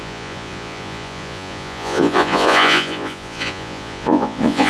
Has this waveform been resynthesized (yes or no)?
yes